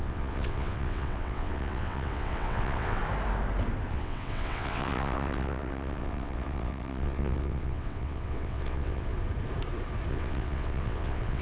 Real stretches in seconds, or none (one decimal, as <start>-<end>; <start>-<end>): 3.0-3.9; 9.1-10.1